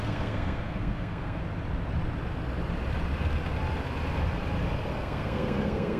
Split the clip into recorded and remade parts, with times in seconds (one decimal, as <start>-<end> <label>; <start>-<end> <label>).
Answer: 0.0-1.4 remade; 1.4-4.9 recorded; 4.9-6.0 remade